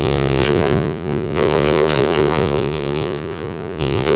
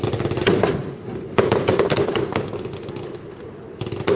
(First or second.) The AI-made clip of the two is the first